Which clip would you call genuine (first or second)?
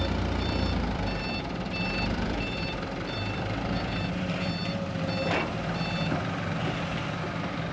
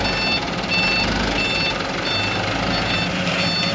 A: second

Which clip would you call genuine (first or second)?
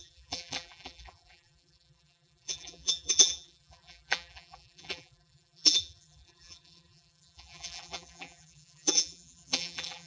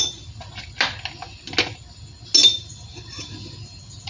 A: second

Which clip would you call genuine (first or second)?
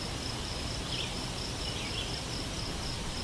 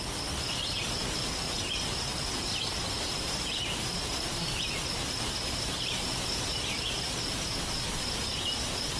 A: second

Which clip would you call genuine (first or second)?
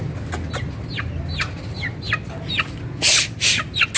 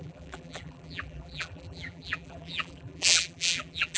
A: first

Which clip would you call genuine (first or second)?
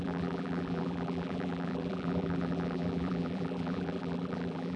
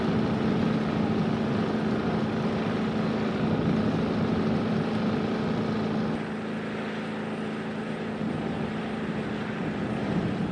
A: second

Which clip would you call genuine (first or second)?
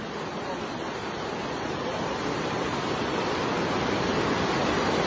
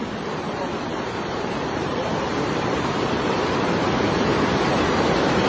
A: first